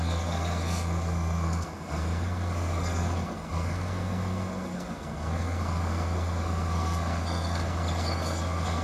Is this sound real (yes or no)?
no